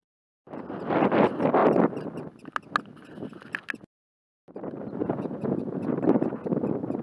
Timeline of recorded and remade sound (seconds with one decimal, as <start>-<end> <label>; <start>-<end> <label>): 0.0-5.0 recorded; 5.0-5.9 remade; 5.9-7.0 recorded